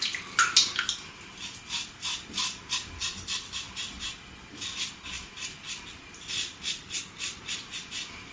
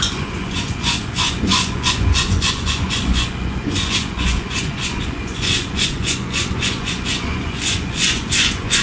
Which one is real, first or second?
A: first